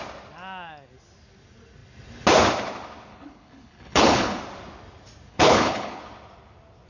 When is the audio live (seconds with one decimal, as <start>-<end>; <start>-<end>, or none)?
0.0-3.1; 4.4-5.3; 6.0-6.9